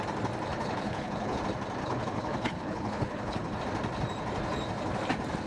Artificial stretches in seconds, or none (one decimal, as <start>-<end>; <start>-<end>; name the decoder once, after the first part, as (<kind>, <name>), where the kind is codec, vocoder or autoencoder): 0.5-1.4 (codec, HILCodec); 1.8-3.6